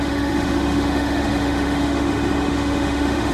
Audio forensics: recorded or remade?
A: remade